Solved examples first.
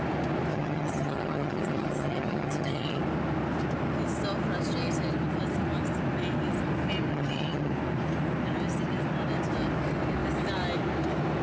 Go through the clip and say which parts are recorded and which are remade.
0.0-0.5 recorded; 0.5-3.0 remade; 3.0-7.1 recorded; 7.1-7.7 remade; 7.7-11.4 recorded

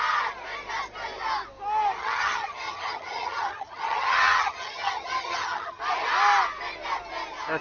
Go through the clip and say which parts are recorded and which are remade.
0.0-2.0 recorded; 2.0-5.8 remade; 5.8-7.6 recorded

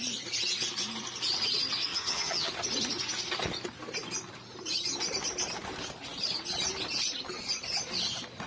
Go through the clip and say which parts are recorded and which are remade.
0.0-1.9 recorded; 1.9-2.5 remade; 2.5-8.5 recorded

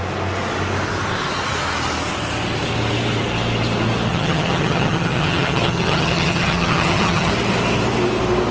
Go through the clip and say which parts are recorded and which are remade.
0.0-4.1 recorded; 4.1-7.3 remade; 7.3-8.5 recorded

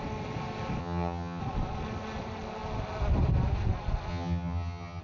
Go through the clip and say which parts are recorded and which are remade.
0.0-0.8 recorded; 0.8-1.4 remade; 1.4-4.1 recorded; 4.1-5.0 remade